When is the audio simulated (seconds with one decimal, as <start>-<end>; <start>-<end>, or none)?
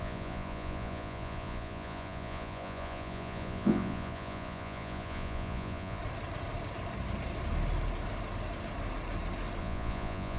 0.0-6.0; 9.6-10.4